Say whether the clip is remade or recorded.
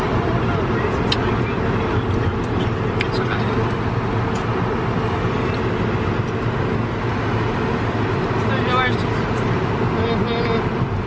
recorded